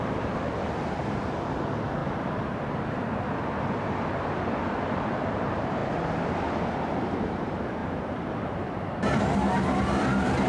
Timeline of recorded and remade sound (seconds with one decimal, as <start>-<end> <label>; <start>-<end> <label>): 0.0-2.0 remade; 2.0-5.3 recorded; 5.3-5.8 remade; 5.8-6.9 recorded; 6.9-10.5 remade